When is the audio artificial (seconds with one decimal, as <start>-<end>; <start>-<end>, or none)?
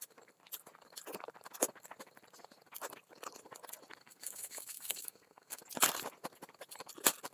4.0-5.6